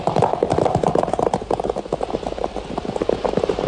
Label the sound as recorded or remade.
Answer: recorded